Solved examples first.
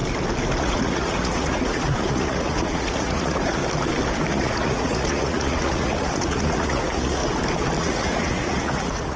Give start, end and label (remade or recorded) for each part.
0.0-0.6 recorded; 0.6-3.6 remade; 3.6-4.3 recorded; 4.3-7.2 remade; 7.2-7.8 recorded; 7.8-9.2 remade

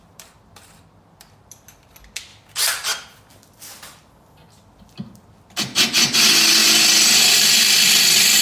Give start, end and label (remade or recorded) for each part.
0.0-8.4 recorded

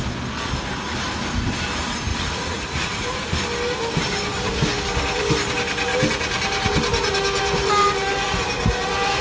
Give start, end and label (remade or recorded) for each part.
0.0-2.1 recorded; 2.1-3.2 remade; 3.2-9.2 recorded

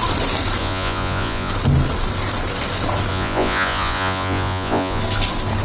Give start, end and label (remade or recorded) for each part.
0.0-0.6 recorded; 0.6-1.5 remade; 1.5-3.1 recorded; 3.1-5.0 remade; 5.0-5.6 recorded

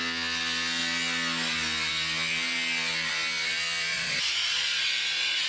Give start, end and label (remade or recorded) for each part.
0.0-3.9 recorded; 3.9-5.5 remade